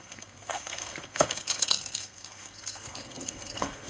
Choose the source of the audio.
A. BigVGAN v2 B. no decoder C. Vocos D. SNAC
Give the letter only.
D